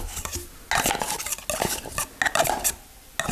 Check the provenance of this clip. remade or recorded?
recorded